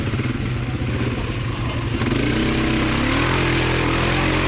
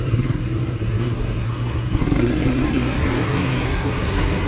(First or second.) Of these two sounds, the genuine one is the first